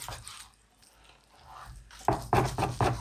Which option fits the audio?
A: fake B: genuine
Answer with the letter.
B